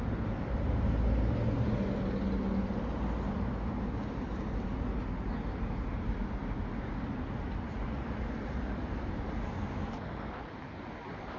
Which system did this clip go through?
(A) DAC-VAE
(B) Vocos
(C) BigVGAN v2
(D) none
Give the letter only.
D